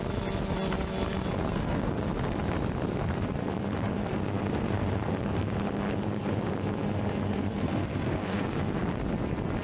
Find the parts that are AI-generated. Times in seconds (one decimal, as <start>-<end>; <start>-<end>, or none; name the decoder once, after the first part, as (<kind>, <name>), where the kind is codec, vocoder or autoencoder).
1.4-1.9 (codec, SNAC); 4.0-5.2; 7.3-8.8